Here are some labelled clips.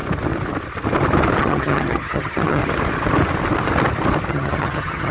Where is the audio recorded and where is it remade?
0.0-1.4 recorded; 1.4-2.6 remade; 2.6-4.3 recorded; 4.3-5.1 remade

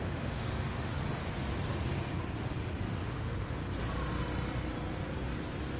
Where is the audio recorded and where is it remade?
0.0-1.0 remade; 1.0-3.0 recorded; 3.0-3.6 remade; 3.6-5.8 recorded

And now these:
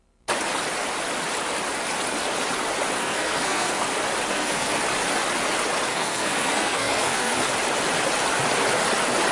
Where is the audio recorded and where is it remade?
0.0-3.0 recorded; 3.0-3.8 remade; 3.8-4.3 recorded; 4.3-4.8 remade; 4.8-5.9 recorded; 5.9-7.4 remade; 7.4-9.3 recorded

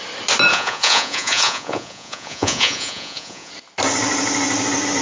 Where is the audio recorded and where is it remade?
0.0-0.5 recorded; 0.5-3.5 remade; 3.5-5.0 recorded

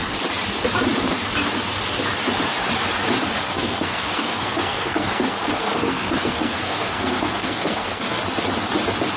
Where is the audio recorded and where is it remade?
0.0-3.5 recorded; 3.5-8.2 remade; 8.2-9.2 recorded

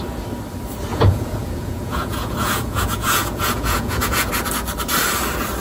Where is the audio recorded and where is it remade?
0.0-0.9 recorded; 0.9-4.3 remade; 4.3-5.6 recorded